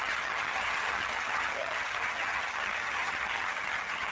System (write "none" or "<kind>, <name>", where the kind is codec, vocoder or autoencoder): vocoder, HiFi-GAN